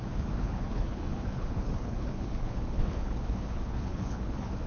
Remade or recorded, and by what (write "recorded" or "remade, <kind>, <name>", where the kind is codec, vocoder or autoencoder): remade, codec, HILCodec